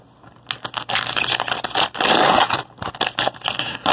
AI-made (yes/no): no